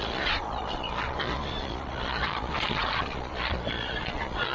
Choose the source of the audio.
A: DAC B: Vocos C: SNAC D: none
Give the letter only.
B